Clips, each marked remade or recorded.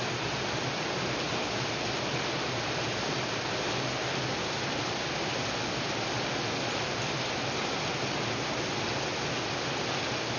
recorded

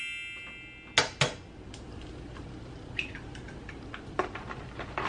recorded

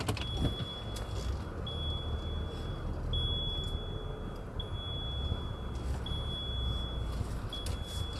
recorded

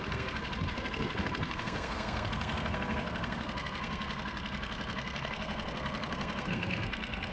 remade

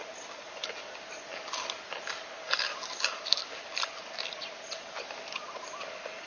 recorded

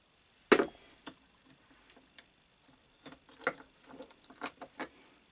recorded